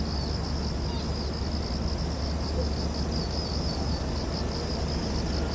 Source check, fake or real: real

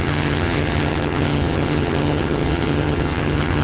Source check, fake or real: fake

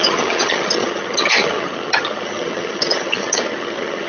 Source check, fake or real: fake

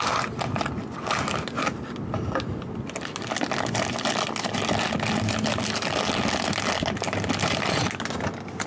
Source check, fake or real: real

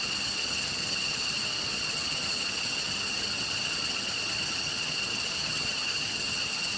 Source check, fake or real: fake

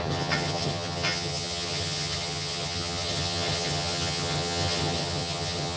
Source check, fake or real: fake